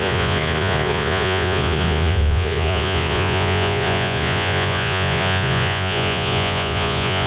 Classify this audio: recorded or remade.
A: remade